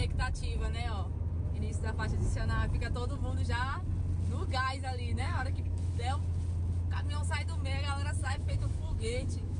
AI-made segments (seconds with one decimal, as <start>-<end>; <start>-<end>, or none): 5.2-6.0; 8.2-9.6